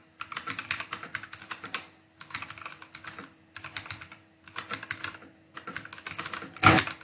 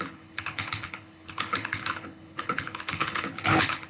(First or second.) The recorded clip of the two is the first